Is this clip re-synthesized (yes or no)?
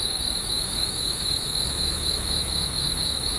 yes